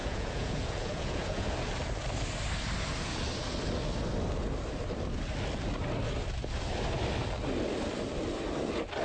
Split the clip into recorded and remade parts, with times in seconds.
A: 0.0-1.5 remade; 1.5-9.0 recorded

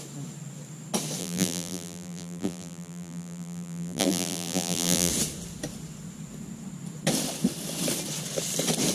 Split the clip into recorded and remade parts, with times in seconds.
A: 0.0-1.2 recorded; 1.2-5.1 remade; 5.1-8.9 recorded